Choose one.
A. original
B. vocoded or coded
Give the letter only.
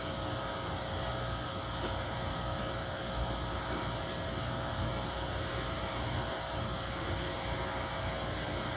A